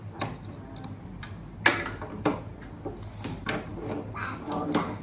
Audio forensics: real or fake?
real